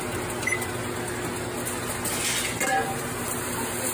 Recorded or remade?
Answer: recorded